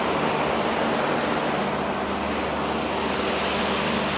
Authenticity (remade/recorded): recorded